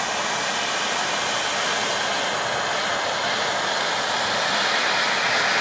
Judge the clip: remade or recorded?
recorded